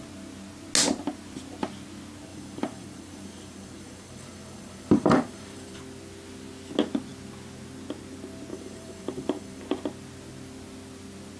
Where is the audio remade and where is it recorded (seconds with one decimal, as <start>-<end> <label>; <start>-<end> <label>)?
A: 0.0-2.3 recorded; 2.3-5.8 remade; 5.8-8.5 recorded; 8.5-9.6 remade; 9.6-11.4 recorded